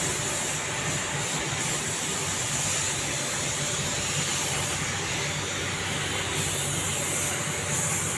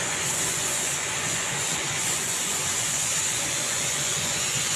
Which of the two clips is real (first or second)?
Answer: first